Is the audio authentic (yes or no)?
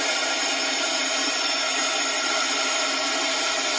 yes